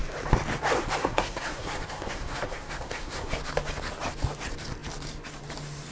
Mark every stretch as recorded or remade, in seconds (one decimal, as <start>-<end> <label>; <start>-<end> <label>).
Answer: 0.0-1.0 recorded; 1.0-3.4 remade; 3.4-5.9 recorded